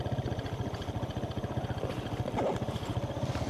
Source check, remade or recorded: recorded